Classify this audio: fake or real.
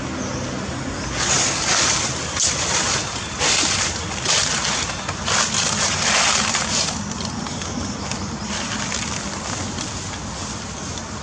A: real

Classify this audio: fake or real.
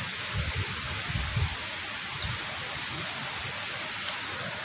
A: real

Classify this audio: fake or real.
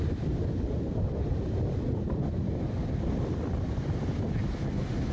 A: real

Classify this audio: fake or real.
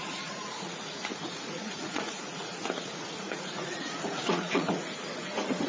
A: fake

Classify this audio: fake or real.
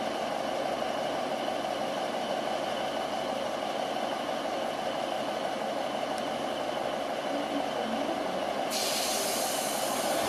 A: real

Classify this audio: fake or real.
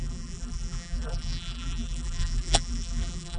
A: fake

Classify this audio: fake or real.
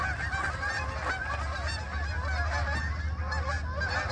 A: real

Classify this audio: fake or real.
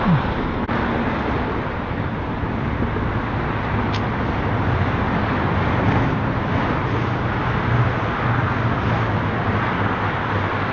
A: real